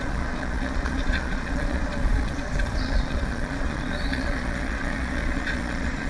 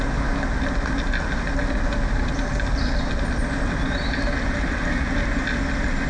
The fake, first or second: first